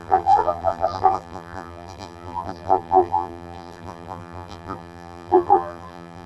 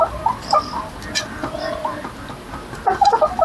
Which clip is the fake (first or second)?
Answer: first